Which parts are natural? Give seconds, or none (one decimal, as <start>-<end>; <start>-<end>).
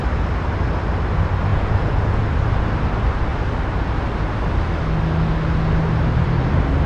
0.0-1.5; 2.2-6.9